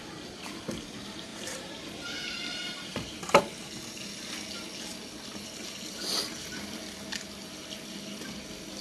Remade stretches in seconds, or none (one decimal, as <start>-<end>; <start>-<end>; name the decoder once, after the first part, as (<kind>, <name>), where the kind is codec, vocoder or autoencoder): 1.3-3.4 (vocoder, BigVGAN v2)